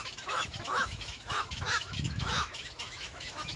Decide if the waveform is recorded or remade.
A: remade